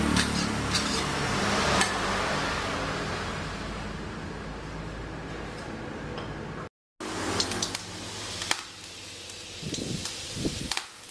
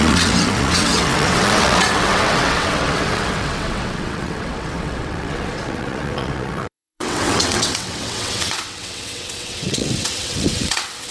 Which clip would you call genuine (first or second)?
first